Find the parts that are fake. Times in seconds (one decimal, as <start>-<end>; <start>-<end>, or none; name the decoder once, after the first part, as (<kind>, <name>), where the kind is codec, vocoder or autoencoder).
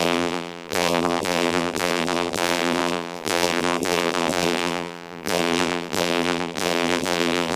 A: 0.0-7.6 (vocoder, BigVGAN v2)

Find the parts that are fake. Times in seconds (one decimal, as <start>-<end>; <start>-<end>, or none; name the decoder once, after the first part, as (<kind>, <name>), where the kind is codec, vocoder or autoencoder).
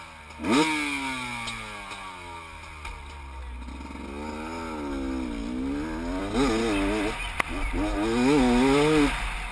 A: none